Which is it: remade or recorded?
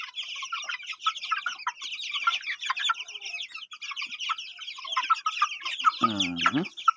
recorded